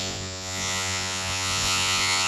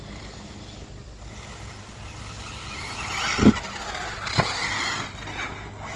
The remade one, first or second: first